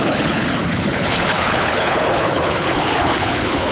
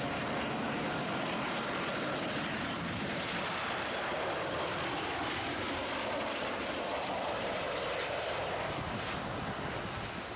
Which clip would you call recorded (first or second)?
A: second